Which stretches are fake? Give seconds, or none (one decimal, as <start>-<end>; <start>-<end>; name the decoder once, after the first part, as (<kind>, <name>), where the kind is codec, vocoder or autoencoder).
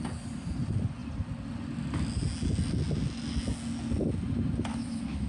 4.7-5.3 (autoencoder, DAC-VAE)